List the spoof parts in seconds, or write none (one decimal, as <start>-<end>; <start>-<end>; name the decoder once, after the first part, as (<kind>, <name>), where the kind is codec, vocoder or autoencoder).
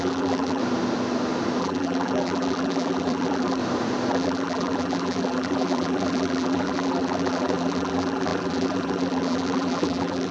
0.0-0.6 (vocoder, BigVGAN v2); 1.6-3.6; 4.1-10.3